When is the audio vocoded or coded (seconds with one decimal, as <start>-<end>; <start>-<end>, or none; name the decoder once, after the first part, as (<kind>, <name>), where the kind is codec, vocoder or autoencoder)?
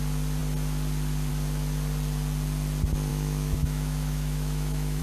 3.1-5.0 (autoencoder, DAC-VAE)